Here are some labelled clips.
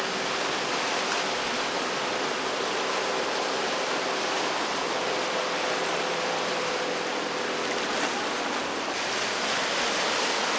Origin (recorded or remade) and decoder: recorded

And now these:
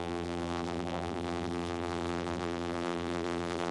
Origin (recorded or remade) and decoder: remade, vocoder, BigVGAN v2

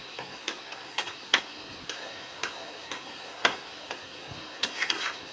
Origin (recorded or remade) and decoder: remade, codec, SNAC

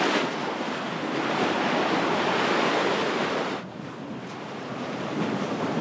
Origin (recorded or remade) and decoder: recorded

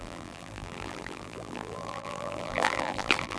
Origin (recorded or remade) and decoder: remade, vocoder, BigVGAN v2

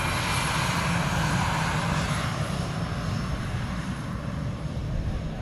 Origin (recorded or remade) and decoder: recorded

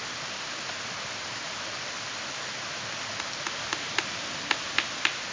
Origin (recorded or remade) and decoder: recorded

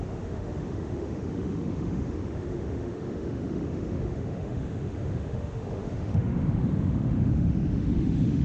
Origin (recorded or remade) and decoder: remade, autoencoder, DAC-VAE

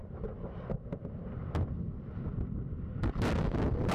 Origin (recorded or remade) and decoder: recorded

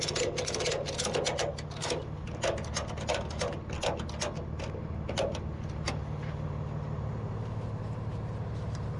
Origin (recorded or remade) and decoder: recorded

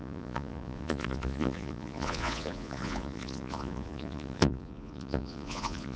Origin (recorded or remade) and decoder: remade, vocoder, Vocos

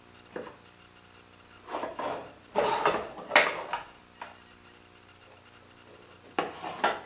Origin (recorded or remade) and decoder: recorded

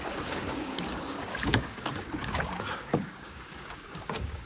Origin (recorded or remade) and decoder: remade, codec, DAC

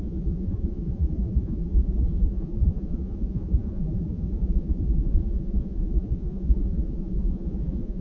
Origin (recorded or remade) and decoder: remade, vocoder, Vocos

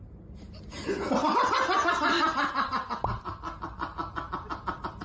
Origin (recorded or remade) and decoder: recorded